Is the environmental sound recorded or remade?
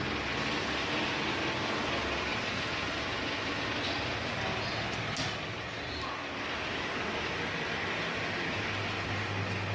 recorded